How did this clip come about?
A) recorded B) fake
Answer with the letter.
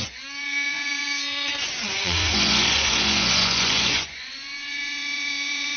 B